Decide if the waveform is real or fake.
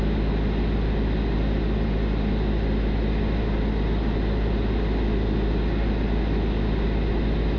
real